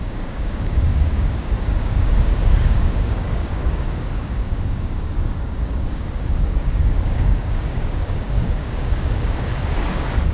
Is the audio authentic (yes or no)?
no